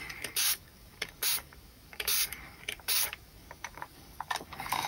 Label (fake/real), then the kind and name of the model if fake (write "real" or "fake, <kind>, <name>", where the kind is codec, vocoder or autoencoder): fake, codec, DAC